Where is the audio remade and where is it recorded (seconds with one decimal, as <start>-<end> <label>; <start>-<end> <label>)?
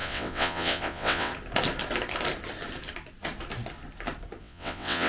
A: 0.0-1.3 remade; 1.3-4.4 recorded; 4.4-5.1 remade